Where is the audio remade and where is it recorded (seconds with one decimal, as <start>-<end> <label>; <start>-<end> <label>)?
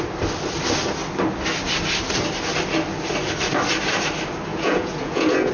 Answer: 0.0-4.5 recorded; 4.5-5.5 remade